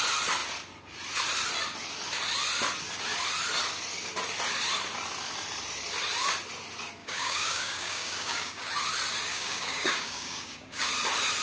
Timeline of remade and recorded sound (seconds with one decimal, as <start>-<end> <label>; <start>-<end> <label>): 0.0-7.0 recorded; 7.0-8.7 remade; 8.7-9.3 recorded; 9.3-10.9 remade; 10.9-11.4 recorded